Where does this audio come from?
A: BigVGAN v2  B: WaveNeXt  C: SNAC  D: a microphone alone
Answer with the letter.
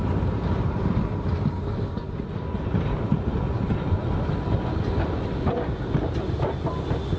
D